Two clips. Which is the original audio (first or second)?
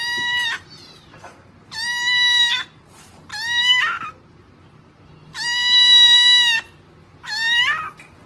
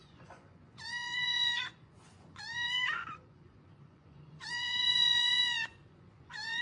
first